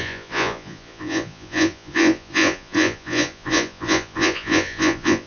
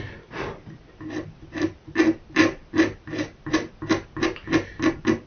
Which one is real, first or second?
second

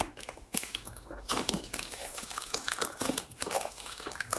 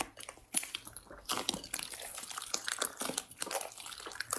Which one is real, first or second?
second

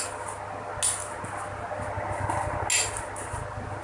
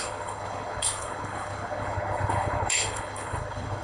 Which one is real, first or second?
first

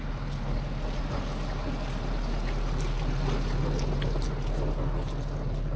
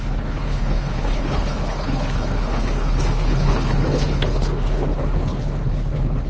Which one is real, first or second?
first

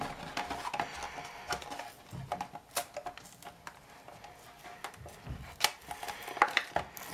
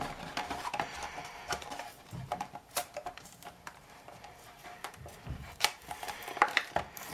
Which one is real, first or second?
first